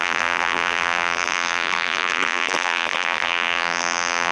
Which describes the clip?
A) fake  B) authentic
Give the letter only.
A